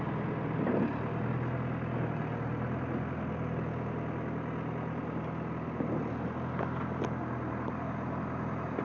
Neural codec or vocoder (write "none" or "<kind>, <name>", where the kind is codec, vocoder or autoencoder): none